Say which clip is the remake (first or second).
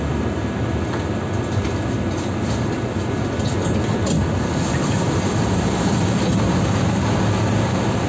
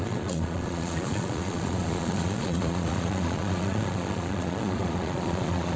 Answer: second